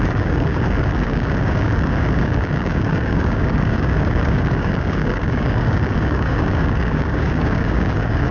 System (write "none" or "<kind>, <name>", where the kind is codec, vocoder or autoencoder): codec, DAC